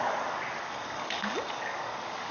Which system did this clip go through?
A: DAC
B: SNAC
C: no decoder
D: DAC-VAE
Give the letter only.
A